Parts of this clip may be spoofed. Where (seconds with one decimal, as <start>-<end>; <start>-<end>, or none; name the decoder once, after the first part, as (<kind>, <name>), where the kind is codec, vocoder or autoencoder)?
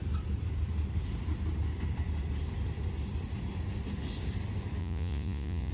4.8-5.7 (vocoder, Vocos)